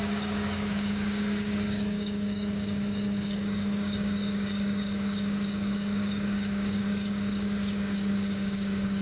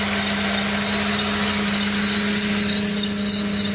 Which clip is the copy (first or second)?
first